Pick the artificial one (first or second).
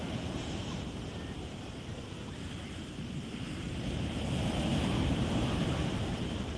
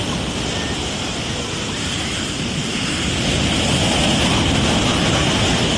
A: first